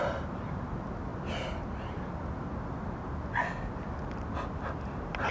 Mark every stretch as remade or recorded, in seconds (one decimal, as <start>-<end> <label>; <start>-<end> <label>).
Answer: 0.0-5.3 recorded